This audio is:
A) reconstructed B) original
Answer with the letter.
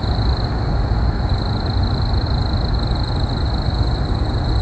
B